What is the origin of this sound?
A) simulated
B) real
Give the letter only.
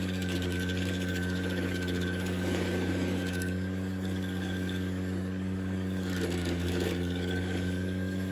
A